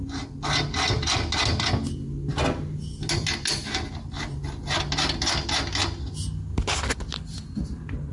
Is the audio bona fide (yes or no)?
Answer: yes